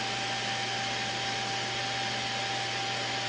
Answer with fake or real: real